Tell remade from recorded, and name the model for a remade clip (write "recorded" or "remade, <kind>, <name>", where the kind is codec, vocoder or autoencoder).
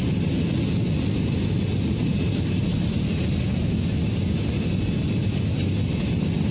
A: recorded